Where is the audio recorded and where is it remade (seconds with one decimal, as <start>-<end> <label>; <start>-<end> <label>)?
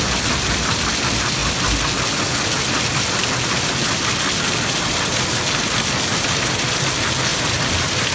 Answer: 0.0-8.1 recorded